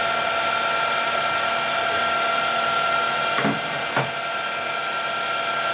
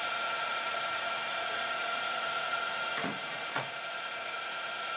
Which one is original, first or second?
first